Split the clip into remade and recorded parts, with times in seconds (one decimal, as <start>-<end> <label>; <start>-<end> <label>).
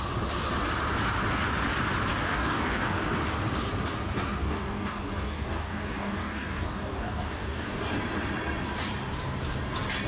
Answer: 0.0-2.1 recorded; 2.1-3.0 remade; 3.0-4.4 recorded; 4.4-7.8 remade; 7.8-10.1 recorded